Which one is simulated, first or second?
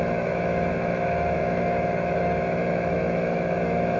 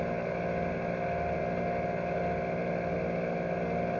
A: first